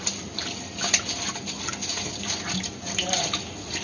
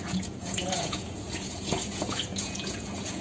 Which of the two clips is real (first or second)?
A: first